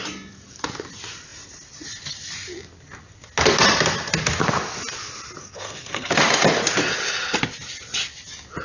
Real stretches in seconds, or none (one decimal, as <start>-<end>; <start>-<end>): 0.0-5.4; 6.1-8.6